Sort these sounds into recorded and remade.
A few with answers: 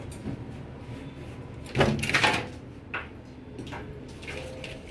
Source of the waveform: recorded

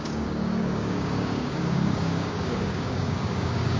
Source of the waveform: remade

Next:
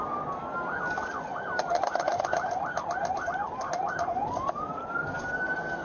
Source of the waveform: recorded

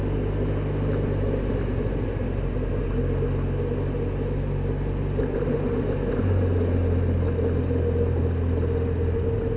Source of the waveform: recorded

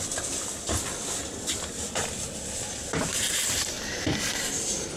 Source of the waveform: recorded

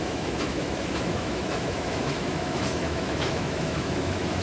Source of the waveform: remade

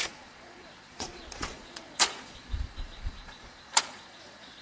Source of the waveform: remade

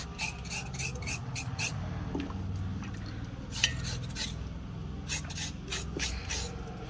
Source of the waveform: recorded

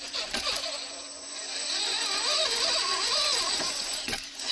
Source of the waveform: remade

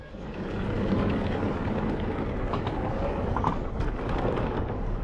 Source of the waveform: remade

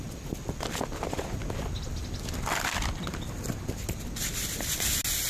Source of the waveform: recorded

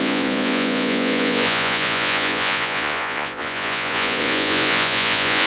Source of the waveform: remade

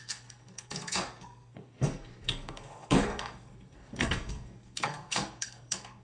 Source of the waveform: remade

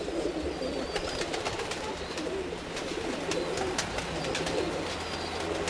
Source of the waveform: recorded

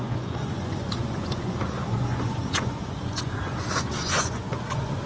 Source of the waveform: remade